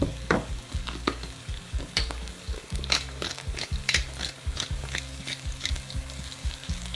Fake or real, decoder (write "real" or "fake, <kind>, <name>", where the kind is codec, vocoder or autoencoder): fake, codec, DAC